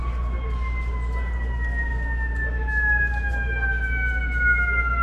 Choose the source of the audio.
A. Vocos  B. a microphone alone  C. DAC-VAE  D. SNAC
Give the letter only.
B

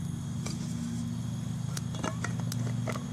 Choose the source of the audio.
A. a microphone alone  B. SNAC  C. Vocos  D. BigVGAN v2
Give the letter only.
A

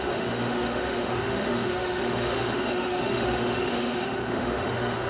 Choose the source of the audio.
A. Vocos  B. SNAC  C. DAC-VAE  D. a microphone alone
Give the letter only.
C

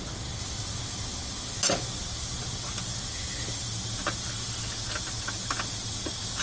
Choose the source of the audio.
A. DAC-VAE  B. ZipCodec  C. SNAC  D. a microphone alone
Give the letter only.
D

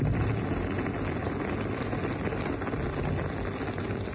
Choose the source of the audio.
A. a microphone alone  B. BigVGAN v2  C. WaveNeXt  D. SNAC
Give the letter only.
A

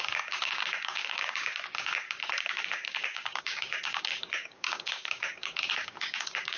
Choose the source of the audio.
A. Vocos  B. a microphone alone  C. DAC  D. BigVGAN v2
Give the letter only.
C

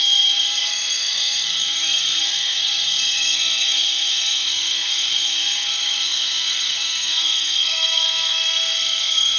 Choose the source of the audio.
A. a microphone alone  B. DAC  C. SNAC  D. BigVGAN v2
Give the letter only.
C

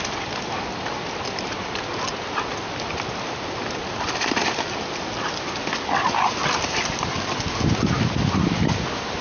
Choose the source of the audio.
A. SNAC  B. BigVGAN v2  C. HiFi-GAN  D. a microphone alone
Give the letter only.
D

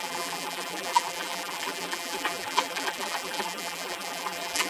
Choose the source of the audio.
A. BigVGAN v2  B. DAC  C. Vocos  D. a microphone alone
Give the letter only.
A